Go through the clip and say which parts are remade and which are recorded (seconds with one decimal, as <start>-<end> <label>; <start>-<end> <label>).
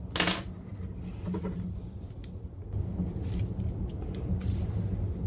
0.0-5.3 recorded